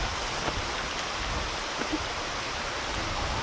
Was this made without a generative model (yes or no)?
yes